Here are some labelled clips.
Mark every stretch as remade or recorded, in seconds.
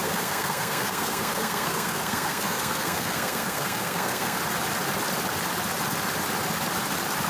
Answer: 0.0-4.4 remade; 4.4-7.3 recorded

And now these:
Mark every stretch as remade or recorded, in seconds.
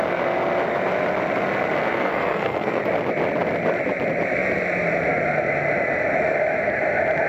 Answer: 0.0-1.9 recorded; 1.9-2.8 remade; 2.8-7.3 recorded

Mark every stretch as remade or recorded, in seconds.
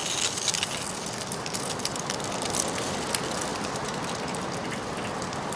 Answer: 0.0-5.6 recorded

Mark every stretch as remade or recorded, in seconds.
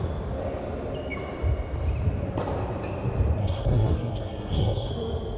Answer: 0.0-3.4 recorded; 3.4-4.9 remade; 4.9-5.4 recorded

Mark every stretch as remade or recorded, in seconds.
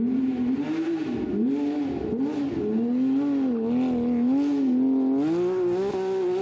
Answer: 0.0-6.4 recorded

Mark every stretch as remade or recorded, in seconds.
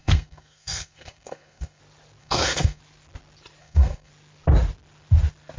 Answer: 0.0-1.8 remade; 1.8-2.2 recorded; 2.2-2.8 remade; 2.8-3.6 recorded; 3.6-4.1 remade; 4.1-5.6 recorded